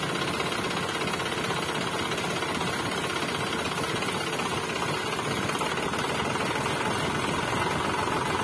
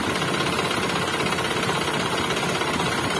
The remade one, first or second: second